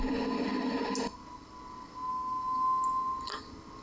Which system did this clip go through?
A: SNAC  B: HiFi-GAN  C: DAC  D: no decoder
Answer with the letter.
D